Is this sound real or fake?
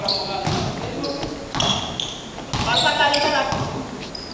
real